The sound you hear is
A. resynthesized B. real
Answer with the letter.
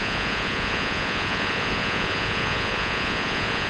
A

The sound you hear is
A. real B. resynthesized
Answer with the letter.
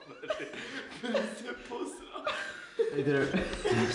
A